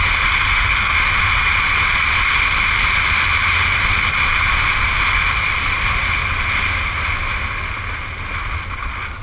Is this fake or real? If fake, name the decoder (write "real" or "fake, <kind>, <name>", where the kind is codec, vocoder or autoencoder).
real